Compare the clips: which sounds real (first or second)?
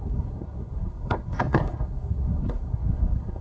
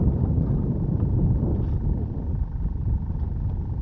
second